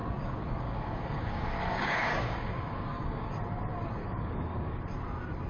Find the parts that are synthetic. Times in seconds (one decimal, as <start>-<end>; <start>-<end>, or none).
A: 0.0-3.3; 4.0-4.8